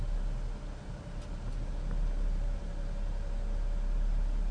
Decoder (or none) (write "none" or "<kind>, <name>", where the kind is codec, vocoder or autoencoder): none